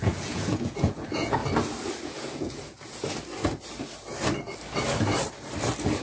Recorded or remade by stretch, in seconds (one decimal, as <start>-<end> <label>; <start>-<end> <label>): 0.0-1.4 remade; 1.4-2.0 recorded; 2.0-3.0 remade; 3.0-6.0 recorded